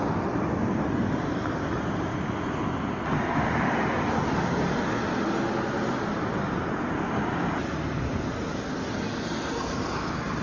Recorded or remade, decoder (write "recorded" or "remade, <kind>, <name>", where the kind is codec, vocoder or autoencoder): recorded